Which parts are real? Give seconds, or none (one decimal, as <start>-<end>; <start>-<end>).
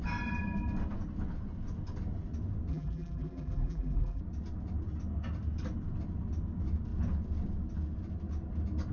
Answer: 0.0-2.7; 4.2-8.9